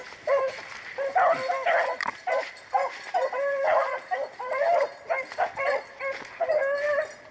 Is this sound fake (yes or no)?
no